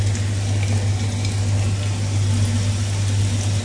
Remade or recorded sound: recorded